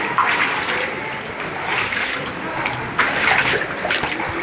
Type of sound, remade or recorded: recorded